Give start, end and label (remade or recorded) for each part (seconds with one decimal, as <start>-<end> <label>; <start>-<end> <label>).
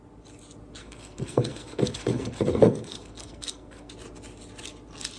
0.0-0.8 recorded; 0.8-3.9 remade; 3.9-5.2 recorded